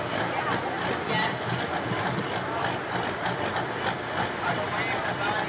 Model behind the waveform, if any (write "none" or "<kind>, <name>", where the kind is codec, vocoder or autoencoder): none